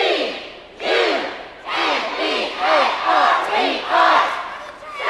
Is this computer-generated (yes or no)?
no